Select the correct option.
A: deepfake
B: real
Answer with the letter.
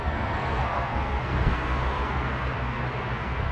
A